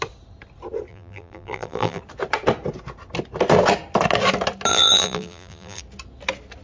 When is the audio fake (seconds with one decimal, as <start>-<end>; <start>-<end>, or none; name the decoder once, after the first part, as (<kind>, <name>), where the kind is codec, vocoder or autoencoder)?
0.9-2.0 (vocoder, BigVGAN v2); 4.7-5.8